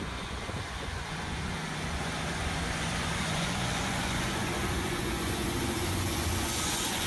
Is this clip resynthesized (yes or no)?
yes